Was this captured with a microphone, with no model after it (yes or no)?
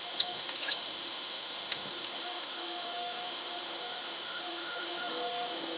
no